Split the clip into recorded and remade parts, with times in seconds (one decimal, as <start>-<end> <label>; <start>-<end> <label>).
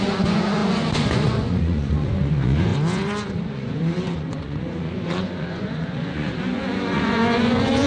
0.0-7.9 remade